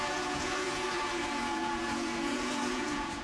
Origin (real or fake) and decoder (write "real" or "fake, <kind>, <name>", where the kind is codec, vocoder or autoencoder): fake, vocoder, Vocos